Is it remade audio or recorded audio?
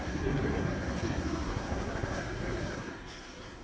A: remade